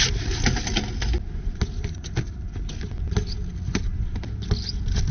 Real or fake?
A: real